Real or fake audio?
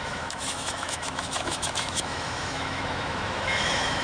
fake